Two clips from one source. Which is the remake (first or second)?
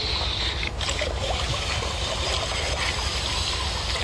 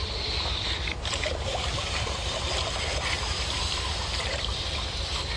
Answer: second